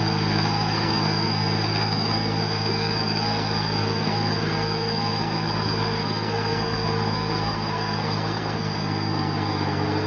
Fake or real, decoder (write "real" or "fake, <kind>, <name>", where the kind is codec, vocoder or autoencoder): fake, codec, SNAC